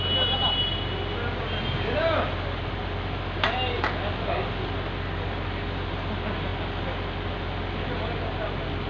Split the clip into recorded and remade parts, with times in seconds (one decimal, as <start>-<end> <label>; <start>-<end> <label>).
0.0-8.9 recorded